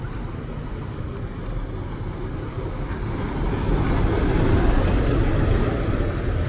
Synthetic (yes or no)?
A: no